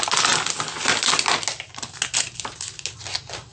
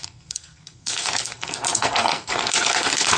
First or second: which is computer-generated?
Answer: second